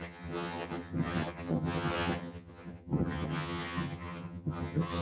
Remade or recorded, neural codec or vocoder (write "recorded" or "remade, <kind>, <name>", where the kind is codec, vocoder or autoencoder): remade, vocoder, HiFi-GAN